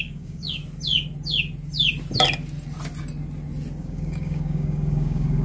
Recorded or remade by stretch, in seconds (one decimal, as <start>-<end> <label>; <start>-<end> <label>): 0.0-0.6 remade; 0.6-3.8 recorded; 3.8-5.4 remade

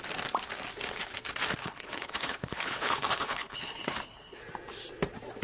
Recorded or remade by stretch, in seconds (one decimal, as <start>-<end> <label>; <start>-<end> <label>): 0.0-1.6 recorded; 1.6-4.4 remade; 4.4-5.4 recorded

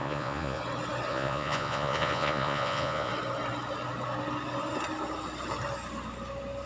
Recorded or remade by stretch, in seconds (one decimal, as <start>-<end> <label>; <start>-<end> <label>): 0.0-0.6 remade; 0.6-1.1 recorded; 1.1-3.1 remade; 3.1-6.7 recorded

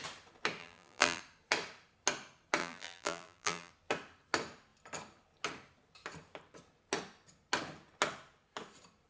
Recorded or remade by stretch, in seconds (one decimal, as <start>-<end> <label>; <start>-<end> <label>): 0.0-0.6 recorded; 0.6-1.2 remade; 1.2-2.6 recorded; 2.6-3.7 remade; 3.7-9.1 recorded

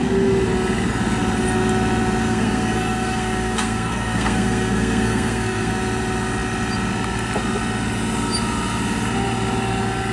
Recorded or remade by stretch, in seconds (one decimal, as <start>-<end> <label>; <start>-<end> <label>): 0.0-2.2 recorded; 2.2-5.7 remade; 5.7-10.1 recorded

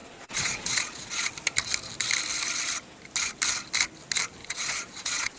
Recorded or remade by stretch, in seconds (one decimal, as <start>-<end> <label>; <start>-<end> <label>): 0.0-1.3 remade; 1.3-4.4 recorded; 4.4-5.4 remade

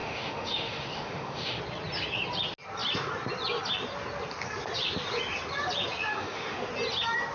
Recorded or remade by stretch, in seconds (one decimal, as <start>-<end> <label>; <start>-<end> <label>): 0.0-1.6 remade; 1.6-6.1 recorded; 6.1-6.7 remade; 6.7-7.3 recorded